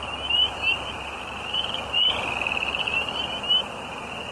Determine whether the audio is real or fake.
real